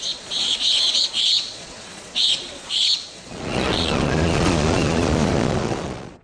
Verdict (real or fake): fake